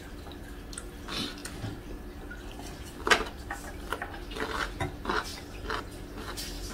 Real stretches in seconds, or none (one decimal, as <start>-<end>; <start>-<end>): 0.0-6.7